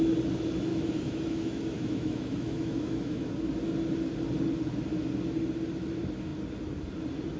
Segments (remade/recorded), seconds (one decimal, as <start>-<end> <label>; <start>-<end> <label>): 0.0-0.7 recorded; 0.7-3.3 remade; 3.3-7.4 recorded